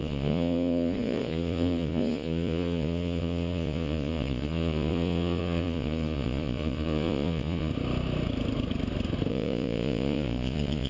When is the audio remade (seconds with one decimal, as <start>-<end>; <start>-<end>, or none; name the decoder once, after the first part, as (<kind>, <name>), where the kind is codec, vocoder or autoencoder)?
0.0-7.7 (vocoder, Vocos); 9.3-10.9

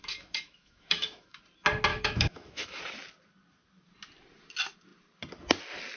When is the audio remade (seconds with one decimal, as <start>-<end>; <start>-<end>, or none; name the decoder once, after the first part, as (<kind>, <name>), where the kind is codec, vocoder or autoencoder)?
0.0-1.4 (autoencoder, DAC-VAE); 1.9-2.8

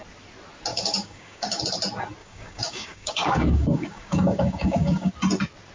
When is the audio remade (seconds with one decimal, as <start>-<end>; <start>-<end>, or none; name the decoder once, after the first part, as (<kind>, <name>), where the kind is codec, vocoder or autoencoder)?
0.7-1.6 (codec, DAC); 2.2-5.1

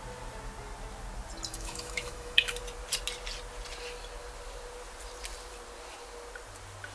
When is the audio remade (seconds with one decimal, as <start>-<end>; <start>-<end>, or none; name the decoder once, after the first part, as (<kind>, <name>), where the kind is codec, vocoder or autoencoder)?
1.5-2.6 (autoencoder, DAC-VAE)

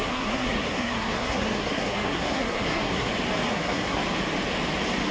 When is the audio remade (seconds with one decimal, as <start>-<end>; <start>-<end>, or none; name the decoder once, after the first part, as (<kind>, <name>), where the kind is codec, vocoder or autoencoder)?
0.0-3.1 (codec, SNAC); 3.5-4.0

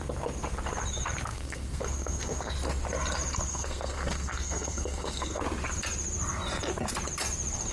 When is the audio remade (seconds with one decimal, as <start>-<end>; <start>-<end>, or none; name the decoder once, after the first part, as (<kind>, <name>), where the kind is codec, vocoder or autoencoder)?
1.3-2.5 (codec, SNAC); 3.5-5.4